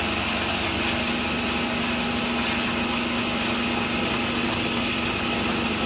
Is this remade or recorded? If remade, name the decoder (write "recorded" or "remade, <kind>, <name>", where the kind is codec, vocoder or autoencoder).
recorded